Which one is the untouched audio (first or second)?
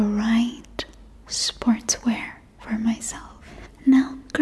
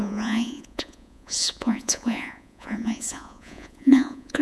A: first